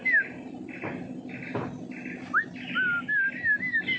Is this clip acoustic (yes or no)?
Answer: yes